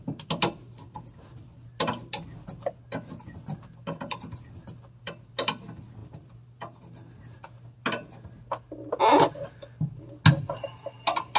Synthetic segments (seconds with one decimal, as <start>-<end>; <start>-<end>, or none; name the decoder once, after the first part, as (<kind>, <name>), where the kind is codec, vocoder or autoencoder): none